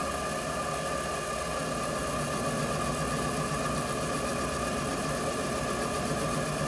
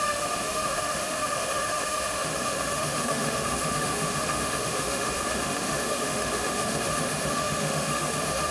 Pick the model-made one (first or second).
second